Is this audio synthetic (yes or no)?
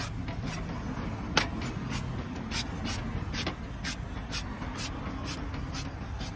no